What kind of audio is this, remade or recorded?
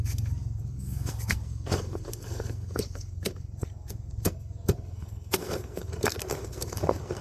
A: remade